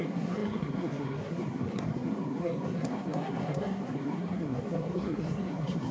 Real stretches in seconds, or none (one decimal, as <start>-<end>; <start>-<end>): none